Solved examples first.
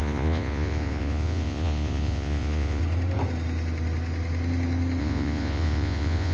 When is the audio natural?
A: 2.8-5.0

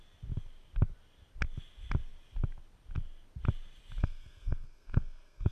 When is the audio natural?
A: 0.0-4.0

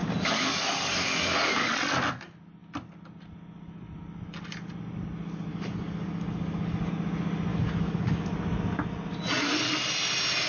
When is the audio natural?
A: 1.7-5.5; 6.9-7.5; 8.2-10.5